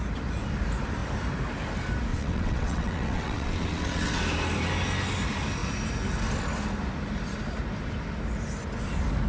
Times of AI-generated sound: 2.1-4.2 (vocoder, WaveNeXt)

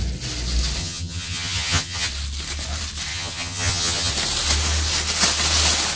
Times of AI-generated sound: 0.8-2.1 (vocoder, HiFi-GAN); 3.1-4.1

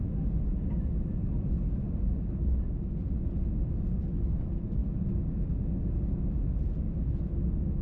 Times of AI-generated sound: none

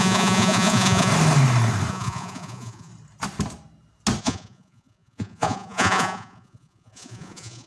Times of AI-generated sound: 0.0-1.1 (vocoder, Vocos); 1.9-2.9; 4.2-7.7

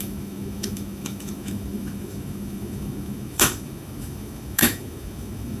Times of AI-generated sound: 0.0-5.6 (autoencoder, DAC-VAE)

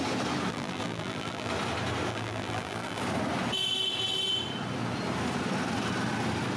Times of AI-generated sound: 0.5-1.5 (vocoder, BigVGAN v2); 2.1-3.0